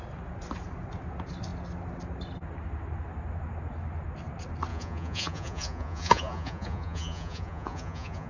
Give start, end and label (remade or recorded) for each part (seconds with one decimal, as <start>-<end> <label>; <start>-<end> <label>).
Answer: 0.0-4.7 recorded; 4.7-8.3 remade